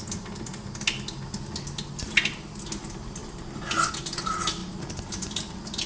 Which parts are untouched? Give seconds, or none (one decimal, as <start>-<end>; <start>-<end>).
0.0-5.9